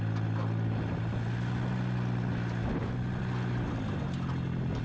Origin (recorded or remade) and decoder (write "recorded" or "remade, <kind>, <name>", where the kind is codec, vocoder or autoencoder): recorded